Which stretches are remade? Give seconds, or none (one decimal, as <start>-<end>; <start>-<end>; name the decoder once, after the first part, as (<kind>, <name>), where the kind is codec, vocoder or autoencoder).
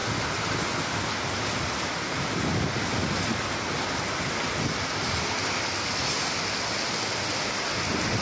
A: none